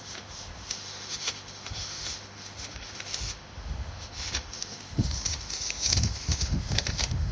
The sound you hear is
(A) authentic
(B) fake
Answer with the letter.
B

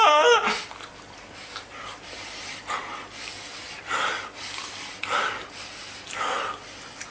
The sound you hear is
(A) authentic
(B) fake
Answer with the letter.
A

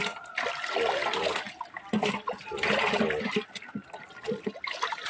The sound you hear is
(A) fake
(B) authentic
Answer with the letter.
B